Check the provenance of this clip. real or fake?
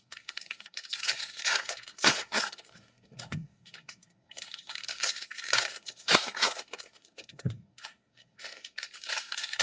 fake